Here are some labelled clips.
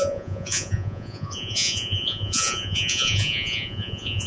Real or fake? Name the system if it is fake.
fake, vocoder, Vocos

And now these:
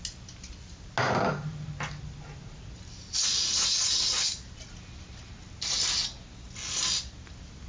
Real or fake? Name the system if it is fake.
real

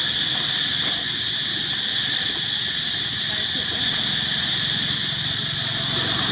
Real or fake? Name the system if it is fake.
real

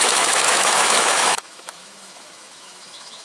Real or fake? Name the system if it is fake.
fake, autoencoder, DAC-VAE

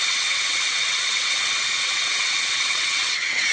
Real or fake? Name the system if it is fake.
fake, vocoder, WaveNeXt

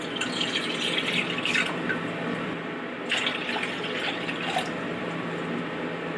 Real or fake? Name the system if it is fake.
real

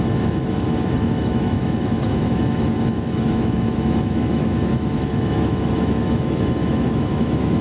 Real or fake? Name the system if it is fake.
fake, autoencoder, DAC-VAE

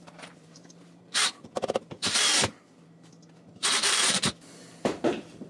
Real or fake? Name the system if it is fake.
fake, vocoder, BigVGAN v2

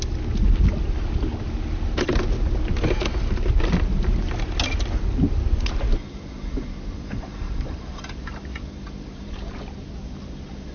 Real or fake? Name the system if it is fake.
real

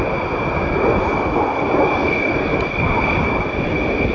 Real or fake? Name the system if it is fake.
real